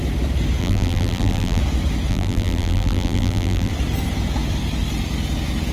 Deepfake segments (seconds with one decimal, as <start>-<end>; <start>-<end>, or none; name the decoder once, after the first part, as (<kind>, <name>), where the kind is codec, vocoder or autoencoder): 0.6-1.6 (vocoder, BigVGAN v2); 2.1-3.7